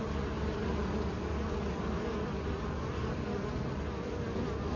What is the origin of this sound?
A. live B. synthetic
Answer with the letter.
A